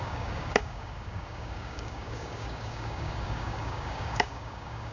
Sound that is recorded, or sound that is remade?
remade